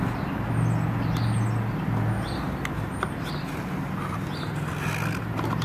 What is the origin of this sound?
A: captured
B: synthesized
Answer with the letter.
A